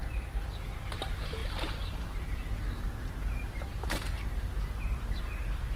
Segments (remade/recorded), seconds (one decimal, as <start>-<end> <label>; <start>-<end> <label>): 0.0-1.0 recorded; 1.0-5.8 remade